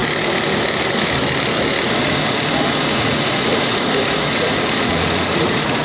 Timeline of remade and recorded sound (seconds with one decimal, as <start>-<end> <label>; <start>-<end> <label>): 0.0-2.7 recorded; 2.7-5.8 remade